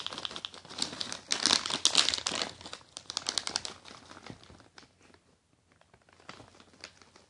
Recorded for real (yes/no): yes